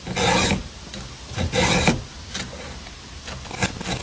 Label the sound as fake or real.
real